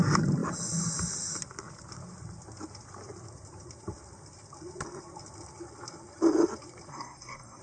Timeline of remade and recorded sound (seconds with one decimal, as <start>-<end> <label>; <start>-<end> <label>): 0.0-6.9 recorded; 6.9-7.6 remade